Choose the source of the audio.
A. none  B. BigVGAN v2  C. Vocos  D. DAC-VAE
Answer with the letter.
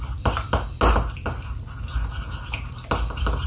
A